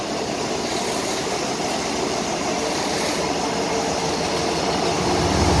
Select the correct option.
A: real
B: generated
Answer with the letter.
A